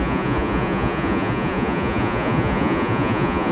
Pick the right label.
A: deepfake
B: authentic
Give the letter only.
A